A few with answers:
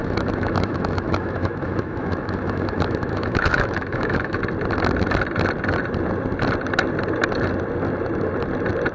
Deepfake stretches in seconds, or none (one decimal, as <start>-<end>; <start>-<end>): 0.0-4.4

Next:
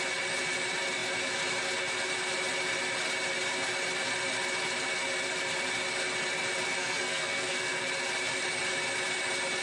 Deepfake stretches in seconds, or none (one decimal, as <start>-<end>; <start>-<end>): 6.8-7.8

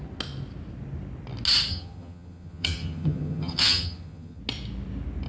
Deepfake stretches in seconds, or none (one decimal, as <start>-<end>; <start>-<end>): 1.7-4.4

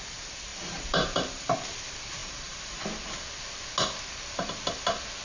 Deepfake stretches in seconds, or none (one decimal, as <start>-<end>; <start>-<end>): 0.5-1.8; 2.2-3.2

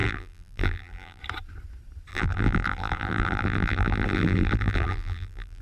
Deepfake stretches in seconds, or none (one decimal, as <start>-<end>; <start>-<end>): 0.0-1.2; 2.1-5.6

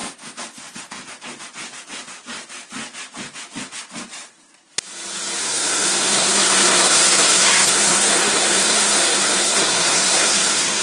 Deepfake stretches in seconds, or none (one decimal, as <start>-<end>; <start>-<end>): 5.4-10.8